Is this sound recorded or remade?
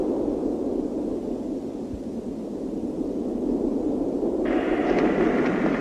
recorded